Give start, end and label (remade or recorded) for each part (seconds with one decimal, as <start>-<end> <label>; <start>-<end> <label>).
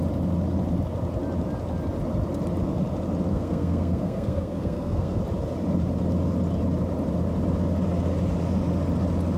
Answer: 0.0-3.3 recorded; 3.3-5.2 remade; 5.2-9.4 recorded